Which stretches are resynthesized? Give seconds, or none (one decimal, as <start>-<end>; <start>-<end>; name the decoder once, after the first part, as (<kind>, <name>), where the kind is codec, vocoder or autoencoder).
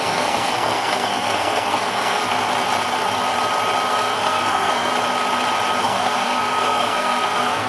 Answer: 0.0-2.2 (codec, SNAC); 3.9-4.9; 5.8-7.7